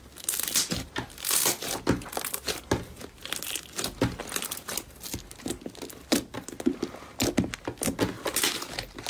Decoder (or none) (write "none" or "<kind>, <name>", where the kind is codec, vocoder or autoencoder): none